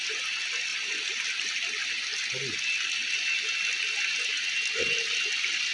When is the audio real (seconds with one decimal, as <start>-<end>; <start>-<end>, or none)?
0.0-0.7; 1.4-5.7